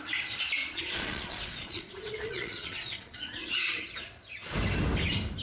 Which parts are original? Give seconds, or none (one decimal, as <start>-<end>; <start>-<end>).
0.0-0.6; 3.8-5.4